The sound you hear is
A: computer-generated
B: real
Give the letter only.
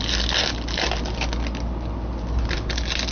B